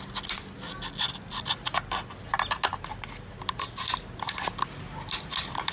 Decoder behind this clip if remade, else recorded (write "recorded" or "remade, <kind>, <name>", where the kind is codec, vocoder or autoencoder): recorded